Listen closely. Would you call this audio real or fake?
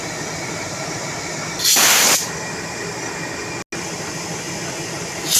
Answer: real